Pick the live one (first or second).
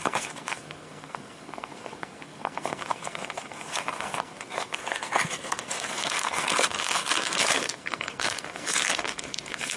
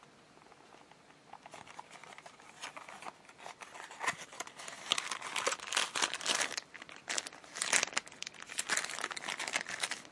second